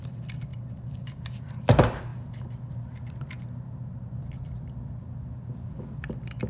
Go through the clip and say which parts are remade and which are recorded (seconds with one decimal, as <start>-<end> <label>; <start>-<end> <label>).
0.0-6.5 recorded